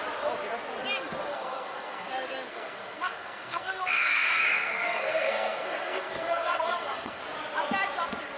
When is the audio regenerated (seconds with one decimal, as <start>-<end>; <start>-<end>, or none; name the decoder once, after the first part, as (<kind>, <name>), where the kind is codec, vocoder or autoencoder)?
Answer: 1.3-2.1 (codec, SNAC); 2.5-7.2